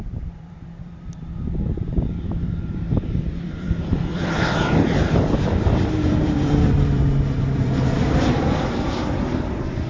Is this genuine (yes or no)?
no